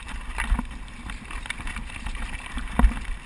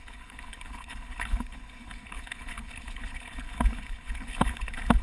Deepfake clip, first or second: second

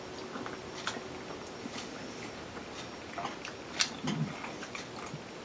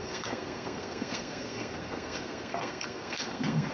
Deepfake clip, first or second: second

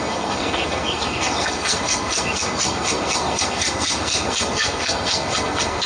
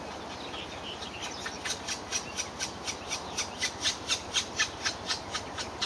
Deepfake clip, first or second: first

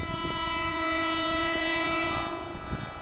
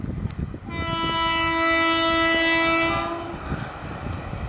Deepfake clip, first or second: first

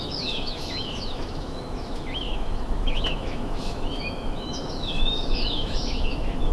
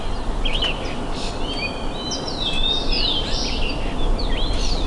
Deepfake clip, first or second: first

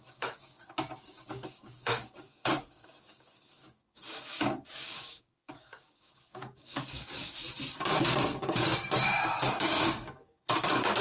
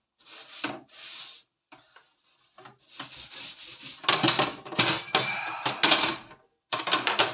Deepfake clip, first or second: first